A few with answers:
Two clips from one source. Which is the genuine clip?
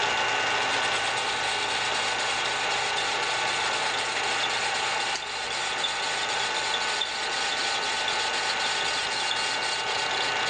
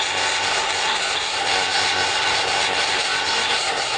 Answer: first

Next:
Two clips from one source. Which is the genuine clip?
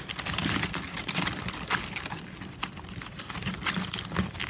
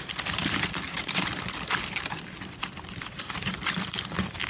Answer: first